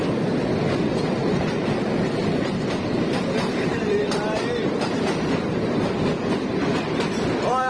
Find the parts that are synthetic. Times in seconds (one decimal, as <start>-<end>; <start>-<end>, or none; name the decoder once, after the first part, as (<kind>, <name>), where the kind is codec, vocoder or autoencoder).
1.2-5.7 (vocoder, BigVGAN v2)